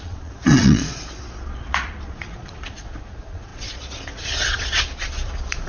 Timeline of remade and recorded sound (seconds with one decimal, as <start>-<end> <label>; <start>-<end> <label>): 0.0-5.7 remade